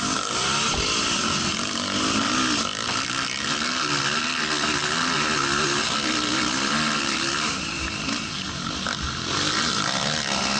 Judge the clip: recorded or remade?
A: recorded